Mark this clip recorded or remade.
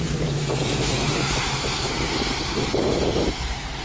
remade